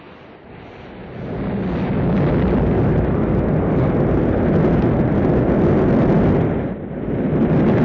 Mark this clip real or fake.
real